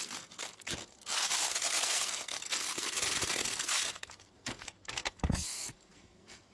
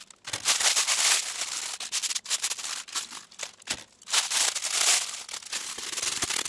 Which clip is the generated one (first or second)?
first